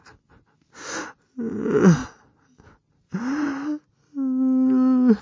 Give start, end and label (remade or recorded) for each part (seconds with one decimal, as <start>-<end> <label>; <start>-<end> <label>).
0.0-5.2 recorded